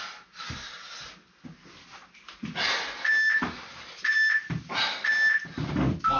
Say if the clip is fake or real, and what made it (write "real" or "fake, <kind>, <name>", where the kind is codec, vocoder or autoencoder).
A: real